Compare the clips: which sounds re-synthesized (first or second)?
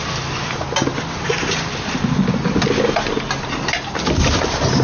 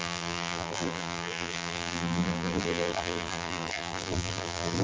second